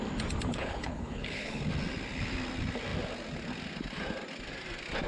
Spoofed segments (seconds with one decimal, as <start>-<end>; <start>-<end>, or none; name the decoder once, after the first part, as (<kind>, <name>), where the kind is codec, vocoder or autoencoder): 0.5-1.6 (codec, HILCodec)